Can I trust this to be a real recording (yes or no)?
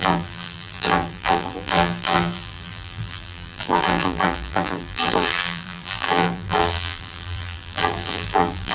no